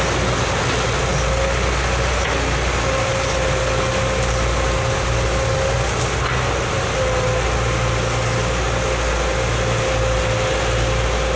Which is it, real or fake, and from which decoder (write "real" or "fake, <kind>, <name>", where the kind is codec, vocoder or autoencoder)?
real